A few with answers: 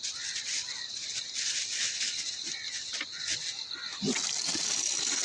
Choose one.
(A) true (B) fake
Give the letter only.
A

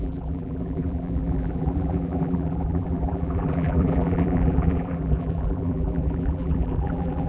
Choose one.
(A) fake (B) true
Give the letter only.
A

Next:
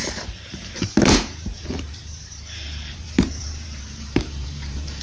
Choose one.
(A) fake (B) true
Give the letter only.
A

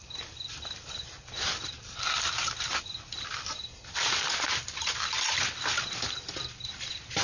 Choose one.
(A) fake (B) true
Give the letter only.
B